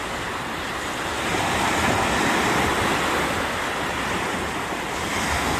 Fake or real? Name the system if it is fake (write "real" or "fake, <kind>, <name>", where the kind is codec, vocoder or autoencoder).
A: real